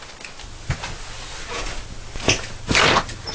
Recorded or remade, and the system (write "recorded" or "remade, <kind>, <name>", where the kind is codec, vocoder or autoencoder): recorded